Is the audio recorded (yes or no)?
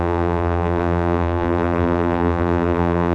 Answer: no